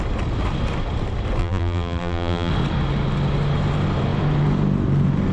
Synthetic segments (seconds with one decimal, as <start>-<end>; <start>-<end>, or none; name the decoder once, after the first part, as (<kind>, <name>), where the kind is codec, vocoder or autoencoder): 1.4-2.5 (vocoder, BigVGAN v2)